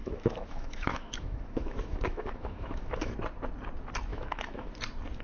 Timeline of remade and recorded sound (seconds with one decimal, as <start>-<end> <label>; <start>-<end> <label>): 0.0-3.1 remade; 3.1-4.1 recorded; 4.1-4.7 remade; 4.7-5.2 recorded